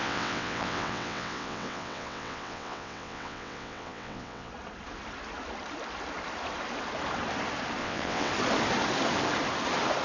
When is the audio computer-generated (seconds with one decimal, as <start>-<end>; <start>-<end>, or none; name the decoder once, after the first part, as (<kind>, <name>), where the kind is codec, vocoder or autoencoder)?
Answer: 0.0-4.5 (vocoder, WaveNeXt); 7.8-8.3